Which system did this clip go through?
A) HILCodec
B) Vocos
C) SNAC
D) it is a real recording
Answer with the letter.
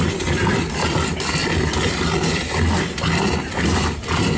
D